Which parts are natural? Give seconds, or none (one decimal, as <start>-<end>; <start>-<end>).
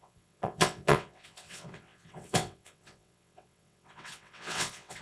none